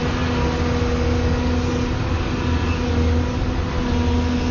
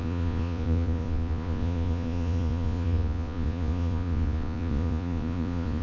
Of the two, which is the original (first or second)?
first